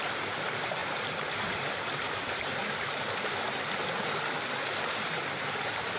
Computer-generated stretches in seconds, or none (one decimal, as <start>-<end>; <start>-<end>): 0.0-2.6; 4.8-6.0